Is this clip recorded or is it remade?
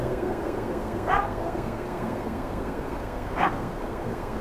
remade